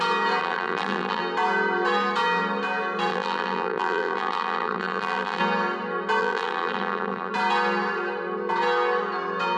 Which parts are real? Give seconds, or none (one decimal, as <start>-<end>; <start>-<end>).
0.0-0.4; 1.2-3.1; 5.4-6.2; 7.3-9.6